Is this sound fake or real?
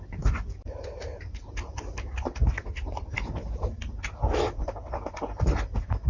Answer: real